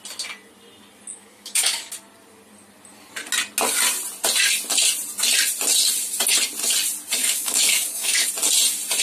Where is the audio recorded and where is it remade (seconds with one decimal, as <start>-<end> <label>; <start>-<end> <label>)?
0.0-1.1 recorded; 1.1-1.9 remade; 1.9-7.2 recorded; 7.2-8.3 remade; 8.3-9.0 recorded